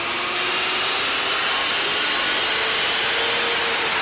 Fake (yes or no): no